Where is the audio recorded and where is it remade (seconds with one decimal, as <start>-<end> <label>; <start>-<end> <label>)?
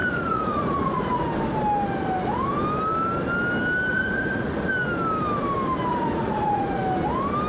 0.0-1.3 remade; 1.3-3.9 recorded; 3.9-4.7 remade; 4.7-5.9 recorded; 5.9-6.8 remade; 6.8-7.5 recorded